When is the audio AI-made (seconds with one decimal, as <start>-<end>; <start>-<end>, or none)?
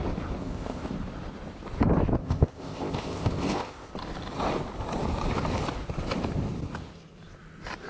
0.4-0.9; 2.2-3.9